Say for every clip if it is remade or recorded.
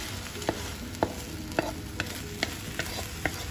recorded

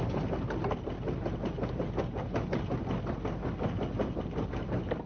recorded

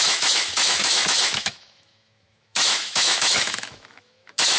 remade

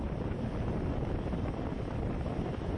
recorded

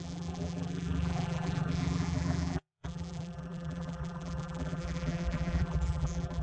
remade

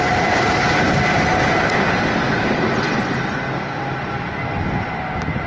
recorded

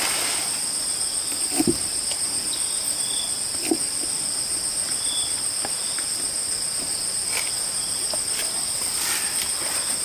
recorded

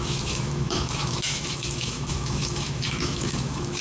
remade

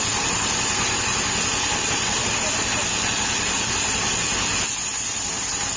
recorded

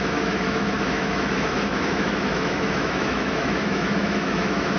remade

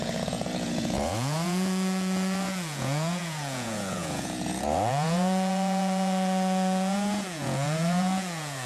remade